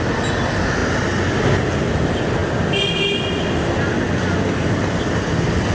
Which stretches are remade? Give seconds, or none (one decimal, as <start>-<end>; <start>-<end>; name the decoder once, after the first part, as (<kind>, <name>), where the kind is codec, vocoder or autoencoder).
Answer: none